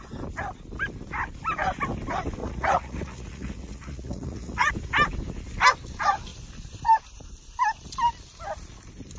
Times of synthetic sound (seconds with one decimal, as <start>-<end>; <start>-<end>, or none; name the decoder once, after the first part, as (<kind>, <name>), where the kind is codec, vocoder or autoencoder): 2.4-4.7 (vocoder, Vocos)